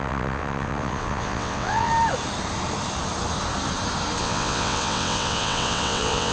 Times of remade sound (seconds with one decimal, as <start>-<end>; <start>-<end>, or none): 0.0-1.9; 4.2-6.3